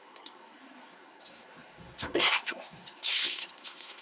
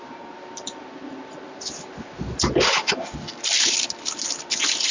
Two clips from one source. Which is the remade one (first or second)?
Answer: first